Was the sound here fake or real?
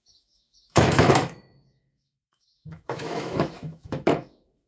fake